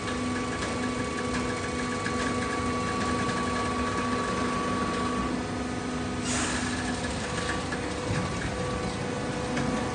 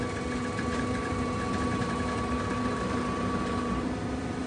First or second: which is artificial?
second